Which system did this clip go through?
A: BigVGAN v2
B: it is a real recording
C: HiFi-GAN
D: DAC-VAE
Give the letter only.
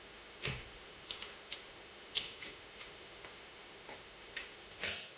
D